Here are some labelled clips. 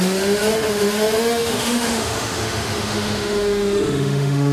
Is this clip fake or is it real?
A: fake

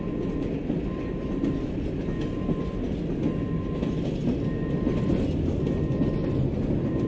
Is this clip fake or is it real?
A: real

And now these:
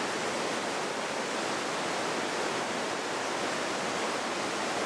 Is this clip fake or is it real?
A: real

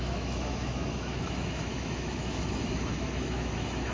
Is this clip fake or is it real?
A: fake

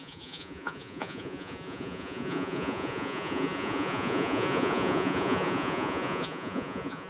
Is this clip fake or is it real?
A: fake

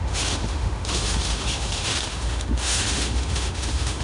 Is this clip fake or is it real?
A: fake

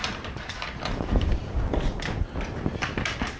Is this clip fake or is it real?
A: fake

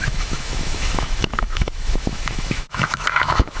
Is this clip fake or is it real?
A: fake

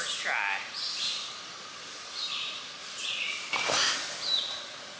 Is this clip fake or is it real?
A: real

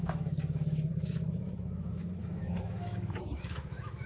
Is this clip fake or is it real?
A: fake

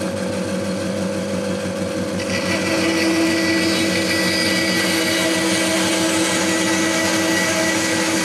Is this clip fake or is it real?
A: real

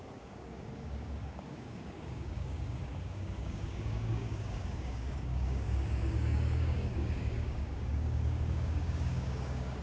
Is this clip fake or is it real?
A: fake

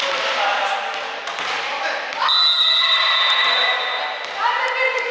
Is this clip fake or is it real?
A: real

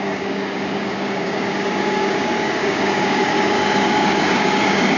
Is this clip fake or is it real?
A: fake